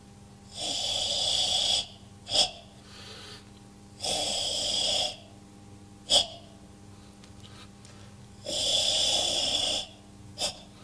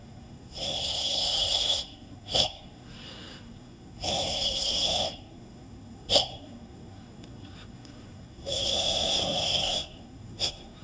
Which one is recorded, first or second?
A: first